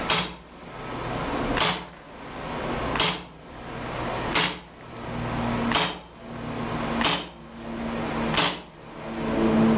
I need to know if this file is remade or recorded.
recorded